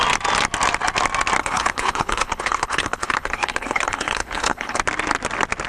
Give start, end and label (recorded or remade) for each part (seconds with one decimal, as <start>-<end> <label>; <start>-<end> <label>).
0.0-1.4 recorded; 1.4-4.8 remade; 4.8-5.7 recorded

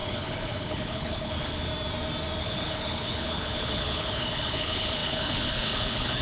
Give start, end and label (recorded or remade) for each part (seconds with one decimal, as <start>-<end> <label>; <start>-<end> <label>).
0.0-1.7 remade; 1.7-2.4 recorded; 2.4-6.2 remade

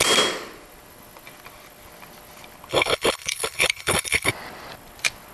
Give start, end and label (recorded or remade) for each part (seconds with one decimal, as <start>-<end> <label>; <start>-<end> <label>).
0.0-2.7 recorded; 2.7-4.3 remade; 4.3-5.3 recorded